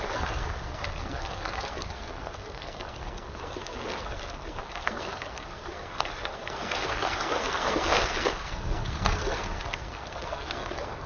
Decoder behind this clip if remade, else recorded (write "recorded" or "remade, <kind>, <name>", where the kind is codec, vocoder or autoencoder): remade, codec, SNAC